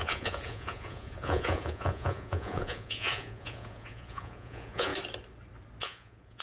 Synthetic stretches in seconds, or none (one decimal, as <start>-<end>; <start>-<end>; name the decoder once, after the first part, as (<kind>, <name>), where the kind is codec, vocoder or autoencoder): 0.0-4.9 (vocoder, Vocos); 5.8-6.4